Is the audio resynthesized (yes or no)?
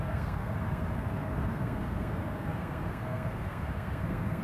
yes